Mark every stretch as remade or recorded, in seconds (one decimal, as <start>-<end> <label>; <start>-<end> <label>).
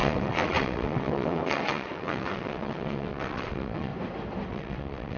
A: 0.0-3.9 remade; 3.9-4.5 recorded; 4.5-5.2 remade